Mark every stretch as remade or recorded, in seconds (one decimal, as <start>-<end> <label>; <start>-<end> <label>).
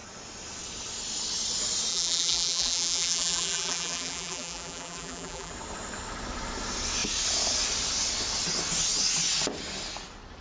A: 0.0-1.9 recorded; 1.9-5.5 remade; 5.5-10.4 recorded